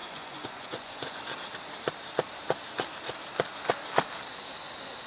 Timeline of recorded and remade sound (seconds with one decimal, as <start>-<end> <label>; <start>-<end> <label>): 0.0-1.2 remade; 1.2-5.1 recorded